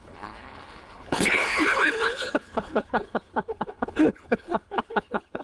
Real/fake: fake